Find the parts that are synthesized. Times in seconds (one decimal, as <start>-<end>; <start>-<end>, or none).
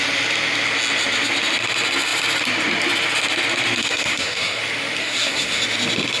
3.8-4.6; 5.0-5.6